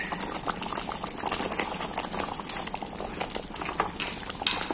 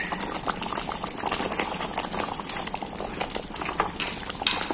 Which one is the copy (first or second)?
second